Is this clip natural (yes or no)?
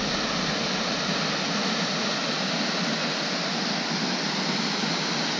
yes